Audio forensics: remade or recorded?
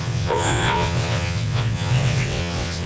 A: remade